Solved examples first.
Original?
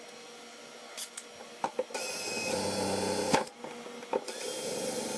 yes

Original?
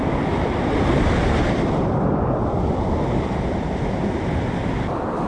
yes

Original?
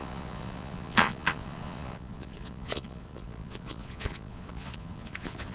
no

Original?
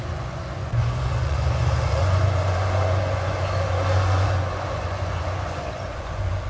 no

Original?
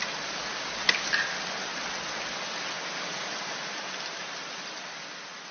yes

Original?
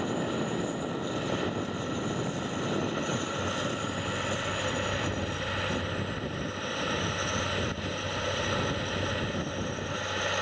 yes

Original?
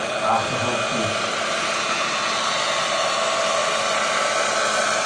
yes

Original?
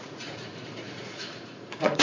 no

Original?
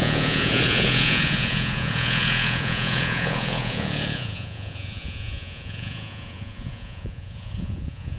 no